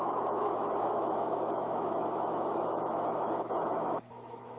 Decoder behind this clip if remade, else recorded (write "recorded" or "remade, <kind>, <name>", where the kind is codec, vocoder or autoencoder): remade, autoencoder, DAC-VAE